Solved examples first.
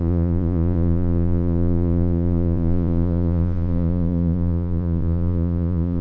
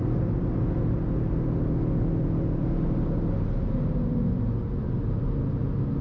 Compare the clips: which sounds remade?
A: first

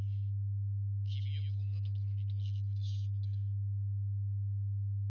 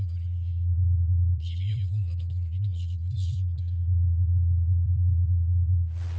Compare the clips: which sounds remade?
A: second